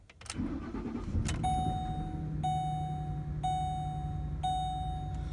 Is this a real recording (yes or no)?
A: yes